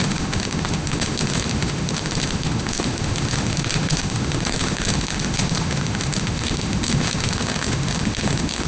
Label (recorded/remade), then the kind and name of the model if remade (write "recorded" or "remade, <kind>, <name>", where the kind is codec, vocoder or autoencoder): remade, autoencoder, DAC-VAE